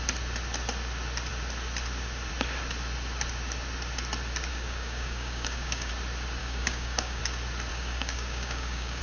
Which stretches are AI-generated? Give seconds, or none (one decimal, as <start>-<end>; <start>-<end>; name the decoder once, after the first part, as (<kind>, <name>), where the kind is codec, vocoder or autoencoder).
4.5-5.9 (codec, DAC); 6.4-7.2; 7.7-9.0